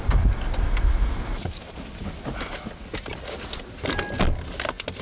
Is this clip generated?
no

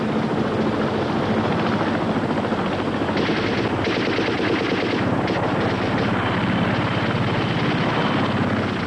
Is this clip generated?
no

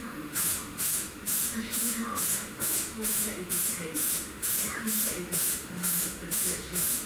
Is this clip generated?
yes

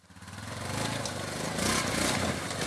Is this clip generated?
no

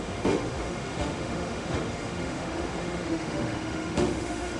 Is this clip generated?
yes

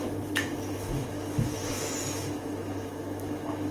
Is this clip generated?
yes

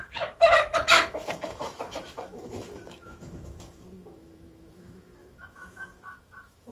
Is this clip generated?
yes